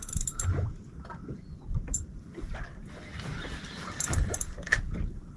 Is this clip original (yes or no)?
yes